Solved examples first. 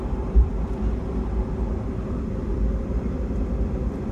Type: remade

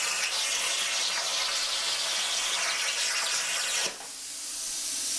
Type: recorded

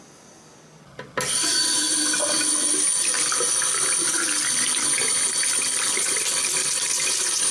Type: recorded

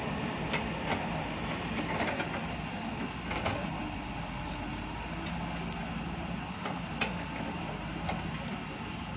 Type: recorded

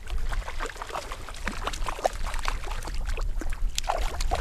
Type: recorded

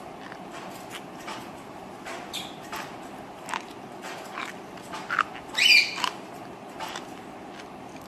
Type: recorded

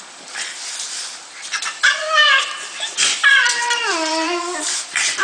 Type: remade